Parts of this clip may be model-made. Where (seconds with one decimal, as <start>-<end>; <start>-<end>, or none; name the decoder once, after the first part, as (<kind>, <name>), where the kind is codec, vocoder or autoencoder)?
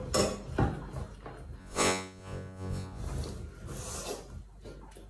1.6-3.0 (vocoder, Vocos)